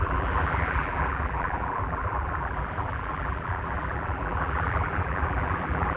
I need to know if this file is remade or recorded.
remade